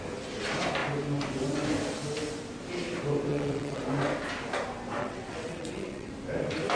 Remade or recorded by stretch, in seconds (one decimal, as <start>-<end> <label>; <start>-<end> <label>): 0.0-3.3 recorded; 3.3-3.8 remade; 3.8-5.0 recorded; 5.0-6.1 remade; 6.1-6.8 recorded